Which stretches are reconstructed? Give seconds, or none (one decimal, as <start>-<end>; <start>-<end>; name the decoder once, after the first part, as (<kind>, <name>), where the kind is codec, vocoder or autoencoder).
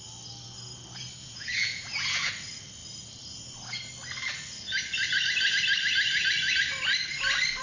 1.2-2.3 (vocoder, Vocos)